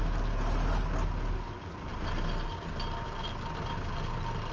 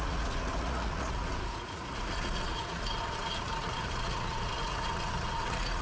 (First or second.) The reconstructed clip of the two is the second